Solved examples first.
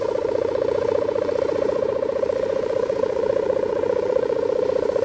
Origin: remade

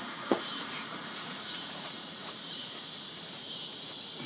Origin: remade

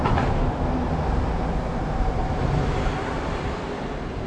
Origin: recorded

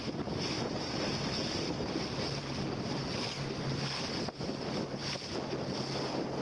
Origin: recorded